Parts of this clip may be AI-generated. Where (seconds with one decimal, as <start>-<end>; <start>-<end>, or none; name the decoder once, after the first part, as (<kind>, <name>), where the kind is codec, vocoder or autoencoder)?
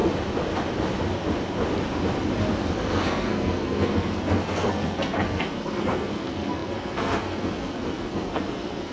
2.7-8.9 (codec, SNAC)